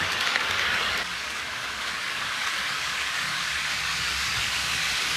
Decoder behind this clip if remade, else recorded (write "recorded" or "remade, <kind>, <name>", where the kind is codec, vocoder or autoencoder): remade, codec, DAC